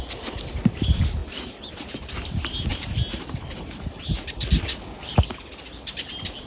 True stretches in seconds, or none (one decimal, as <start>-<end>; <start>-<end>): 0.0-6.5